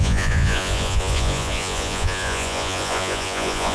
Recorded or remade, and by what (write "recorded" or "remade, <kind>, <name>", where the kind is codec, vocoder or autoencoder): remade, vocoder, Vocos